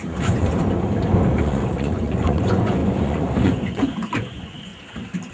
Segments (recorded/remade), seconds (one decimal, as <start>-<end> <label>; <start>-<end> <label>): 0.0-0.5 remade; 0.5-1.4 recorded; 1.4-4.7 remade; 4.7-5.3 recorded